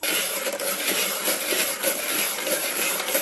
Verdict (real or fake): fake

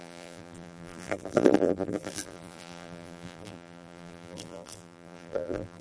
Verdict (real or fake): fake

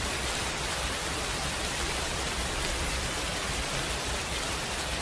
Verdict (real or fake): fake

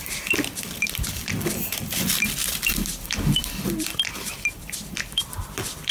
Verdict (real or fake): fake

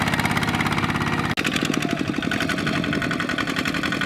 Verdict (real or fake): real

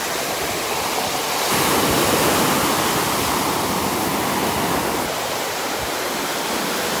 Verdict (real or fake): real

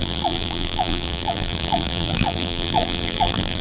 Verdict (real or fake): fake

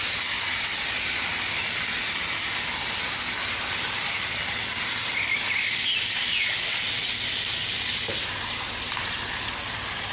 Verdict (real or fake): real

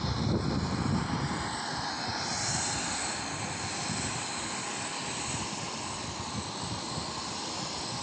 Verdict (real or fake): real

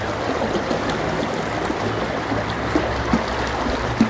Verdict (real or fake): real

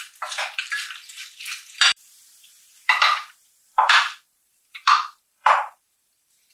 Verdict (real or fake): fake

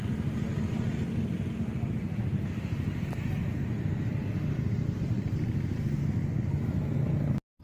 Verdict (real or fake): real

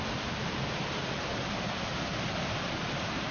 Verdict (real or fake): real